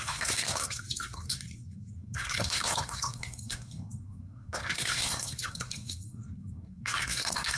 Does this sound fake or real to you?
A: fake